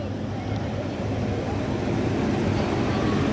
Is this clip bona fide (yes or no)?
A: yes